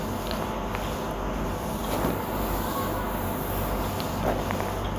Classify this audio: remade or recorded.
recorded